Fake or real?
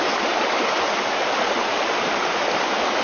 real